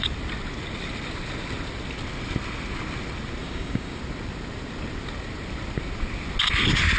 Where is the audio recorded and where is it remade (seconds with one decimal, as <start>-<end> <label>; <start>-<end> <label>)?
0.0-3.4 recorded; 3.4-4.0 remade; 4.0-7.0 recorded